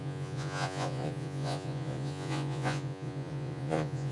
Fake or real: fake